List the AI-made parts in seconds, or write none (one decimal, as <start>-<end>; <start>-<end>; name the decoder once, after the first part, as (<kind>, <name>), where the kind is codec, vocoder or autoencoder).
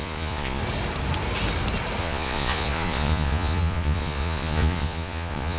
0.0-0.6 (vocoder, Vocos); 2.0-5.6